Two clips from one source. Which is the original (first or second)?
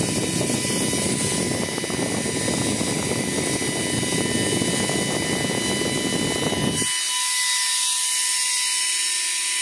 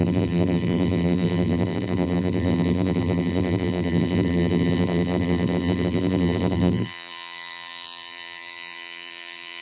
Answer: first